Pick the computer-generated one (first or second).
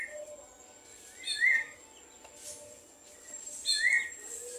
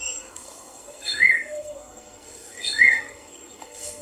second